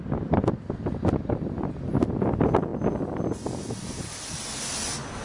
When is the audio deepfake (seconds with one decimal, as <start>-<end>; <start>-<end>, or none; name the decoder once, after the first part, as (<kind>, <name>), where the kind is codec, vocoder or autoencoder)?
none